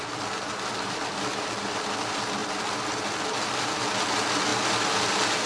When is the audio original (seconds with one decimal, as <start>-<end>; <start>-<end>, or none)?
0.0-5.5

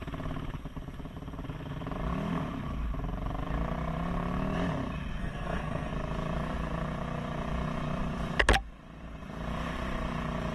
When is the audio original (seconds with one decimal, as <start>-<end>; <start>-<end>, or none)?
0.0-5.2; 5.9-10.5

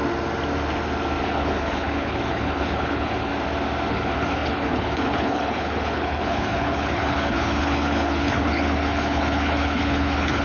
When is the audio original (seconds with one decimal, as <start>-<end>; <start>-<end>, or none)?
0.0-1.2; 3.3-3.9

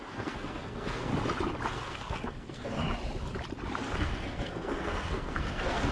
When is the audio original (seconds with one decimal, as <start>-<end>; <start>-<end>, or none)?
1.1-1.7; 2.8-3.9

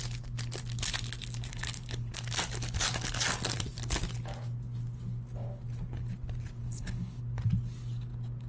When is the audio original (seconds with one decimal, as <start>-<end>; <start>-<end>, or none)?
0.0-1.5; 2.1-6.6; 7.2-8.5

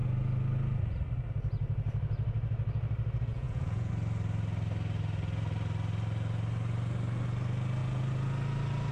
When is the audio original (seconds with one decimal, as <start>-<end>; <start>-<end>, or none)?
0.0-3.3; 3.9-8.9

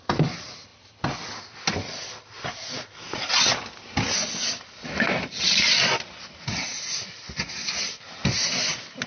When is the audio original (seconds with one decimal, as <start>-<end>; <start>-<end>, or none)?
0.0-9.1